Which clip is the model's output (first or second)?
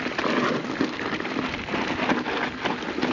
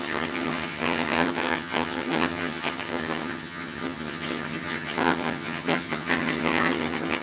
second